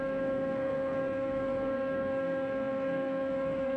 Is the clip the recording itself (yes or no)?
no